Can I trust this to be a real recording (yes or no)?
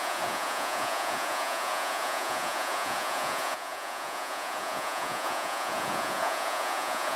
no